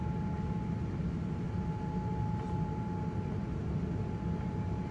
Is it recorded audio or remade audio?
recorded